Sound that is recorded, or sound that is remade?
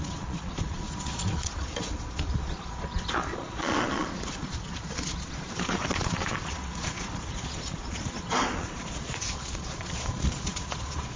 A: remade